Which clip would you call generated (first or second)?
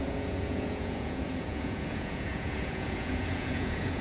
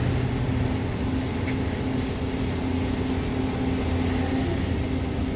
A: first